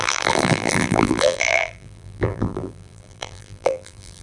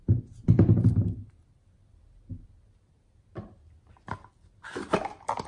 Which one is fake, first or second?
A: first